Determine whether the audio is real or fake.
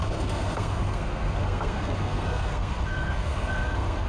fake